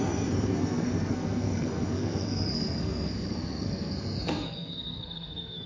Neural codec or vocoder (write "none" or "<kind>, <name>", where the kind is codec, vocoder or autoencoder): codec, SNAC